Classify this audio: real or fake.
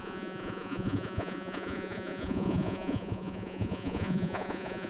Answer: fake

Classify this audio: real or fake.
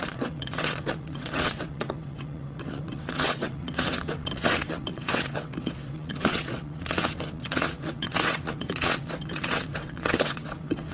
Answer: fake